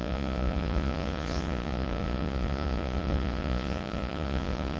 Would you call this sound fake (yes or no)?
yes